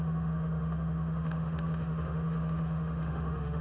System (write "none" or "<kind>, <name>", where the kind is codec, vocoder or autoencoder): autoencoder, DAC-VAE